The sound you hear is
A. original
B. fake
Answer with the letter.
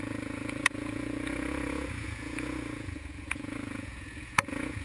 B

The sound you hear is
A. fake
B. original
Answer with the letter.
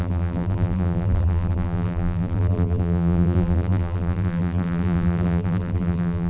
A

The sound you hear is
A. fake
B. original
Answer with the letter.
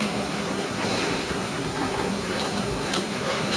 A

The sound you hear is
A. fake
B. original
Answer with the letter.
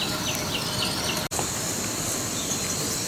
B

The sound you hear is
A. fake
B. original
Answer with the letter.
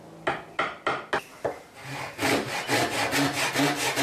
B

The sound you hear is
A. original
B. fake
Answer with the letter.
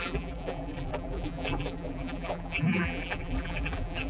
B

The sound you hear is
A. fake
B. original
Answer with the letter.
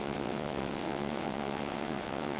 A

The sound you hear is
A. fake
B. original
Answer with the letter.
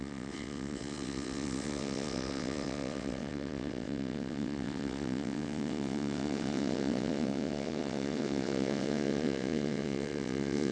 A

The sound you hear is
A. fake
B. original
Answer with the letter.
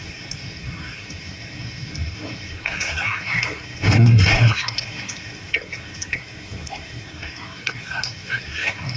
A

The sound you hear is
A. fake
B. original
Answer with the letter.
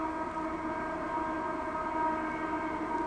B